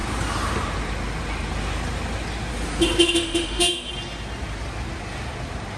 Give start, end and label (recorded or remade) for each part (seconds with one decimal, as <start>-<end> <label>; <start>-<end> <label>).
0.0-3.0 recorded; 3.0-3.9 remade; 3.9-5.8 recorded